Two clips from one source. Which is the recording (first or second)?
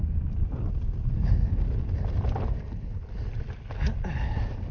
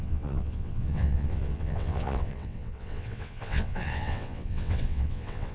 first